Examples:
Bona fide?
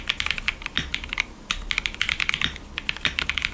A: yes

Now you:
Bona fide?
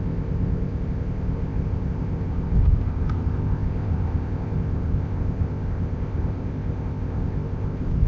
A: no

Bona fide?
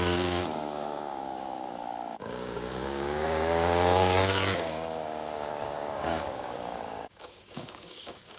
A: no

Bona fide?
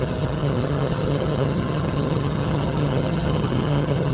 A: no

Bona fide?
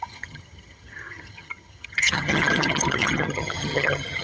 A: no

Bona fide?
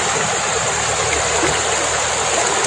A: yes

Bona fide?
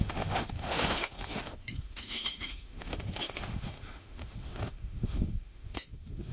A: no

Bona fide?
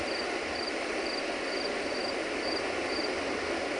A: yes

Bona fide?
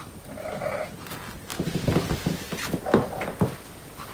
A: yes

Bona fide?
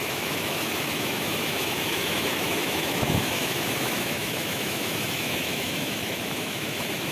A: no